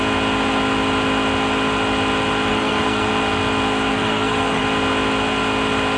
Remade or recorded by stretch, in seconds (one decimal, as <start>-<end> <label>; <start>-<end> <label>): 0.0-2.5 recorded; 2.5-3.1 remade; 3.1-3.9 recorded; 3.9-4.6 remade; 4.6-6.0 recorded